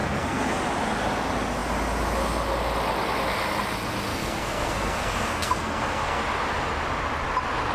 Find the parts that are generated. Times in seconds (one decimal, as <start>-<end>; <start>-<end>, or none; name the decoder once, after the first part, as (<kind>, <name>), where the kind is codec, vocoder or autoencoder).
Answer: 0.0-0.6 (codec, SNAC); 4.1-6.2